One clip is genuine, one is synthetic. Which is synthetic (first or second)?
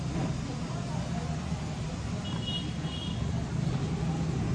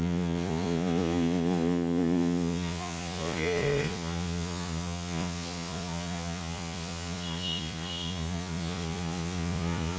second